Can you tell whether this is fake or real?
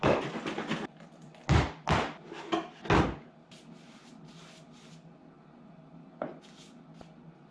real